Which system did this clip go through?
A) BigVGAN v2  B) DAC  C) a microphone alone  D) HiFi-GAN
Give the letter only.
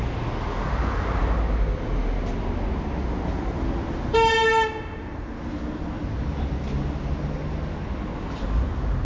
C